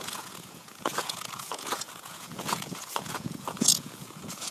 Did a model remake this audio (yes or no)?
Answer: yes